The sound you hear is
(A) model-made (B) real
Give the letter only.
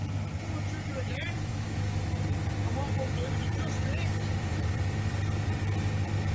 A